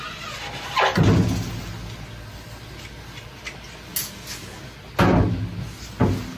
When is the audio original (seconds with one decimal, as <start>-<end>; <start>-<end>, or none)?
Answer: 0.0-6.4